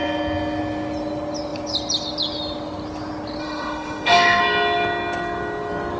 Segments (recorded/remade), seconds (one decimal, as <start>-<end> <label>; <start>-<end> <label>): 0.0-3.4 recorded; 3.4-4.4 remade; 4.4-6.0 recorded